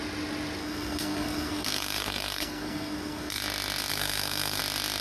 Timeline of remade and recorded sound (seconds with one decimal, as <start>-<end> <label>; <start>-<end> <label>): 0.0-0.6 recorded; 0.6-3.4 remade; 3.4-3.9 recorded; 3.9-4.6 remade; 4.6-5.0 recorded